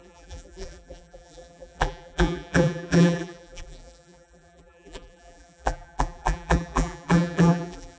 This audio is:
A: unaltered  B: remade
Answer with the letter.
B